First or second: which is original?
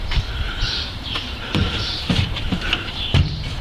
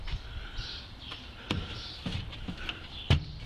second